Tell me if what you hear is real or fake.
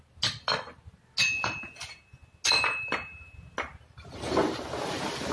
real